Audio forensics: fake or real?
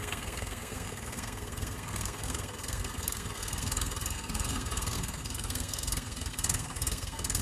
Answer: fake